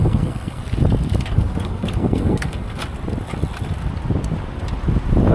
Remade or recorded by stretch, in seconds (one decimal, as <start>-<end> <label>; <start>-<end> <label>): 0.0-0.6 remade; 0.6-1.3 recorded; 1.3-2.8 remade; 2.8-5.3 recorded